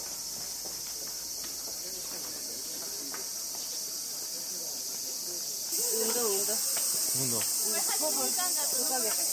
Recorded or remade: recorded